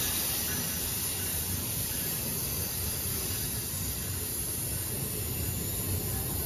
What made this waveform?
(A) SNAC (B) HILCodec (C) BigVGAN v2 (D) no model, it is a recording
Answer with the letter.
D